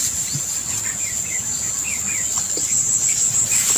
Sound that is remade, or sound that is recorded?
recorded